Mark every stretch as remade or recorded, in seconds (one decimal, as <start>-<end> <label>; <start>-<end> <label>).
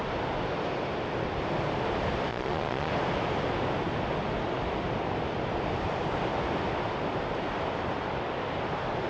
0.0-2.3 recorded; 2.3-2.9 remade; 2.9-9.1 recorded